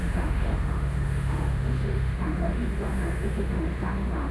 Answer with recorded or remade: remade